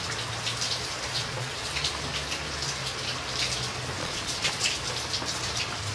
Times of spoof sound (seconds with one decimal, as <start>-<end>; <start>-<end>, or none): 1.1-1.7; 4.0-4.5